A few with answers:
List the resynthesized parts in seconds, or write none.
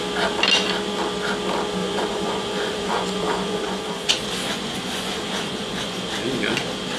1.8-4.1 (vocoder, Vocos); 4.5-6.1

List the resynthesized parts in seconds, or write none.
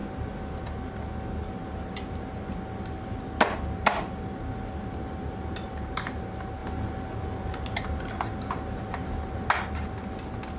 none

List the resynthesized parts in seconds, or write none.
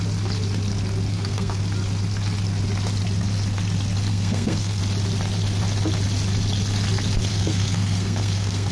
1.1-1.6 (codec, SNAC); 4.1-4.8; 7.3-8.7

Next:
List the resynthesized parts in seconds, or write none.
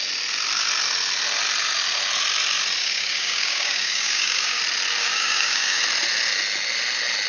2.8-4.6 (codec, DAC); 5.0-5.8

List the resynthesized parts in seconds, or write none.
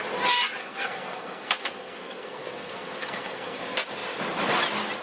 0.6-3.6 (codec, SNAC)